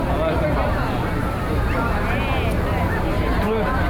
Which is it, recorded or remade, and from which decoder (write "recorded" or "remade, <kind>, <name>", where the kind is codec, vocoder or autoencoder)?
recorded